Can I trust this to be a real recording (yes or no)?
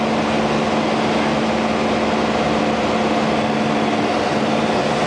yes